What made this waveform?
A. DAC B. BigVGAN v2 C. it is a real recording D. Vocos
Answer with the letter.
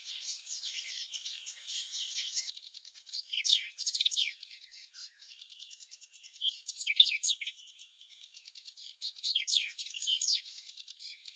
A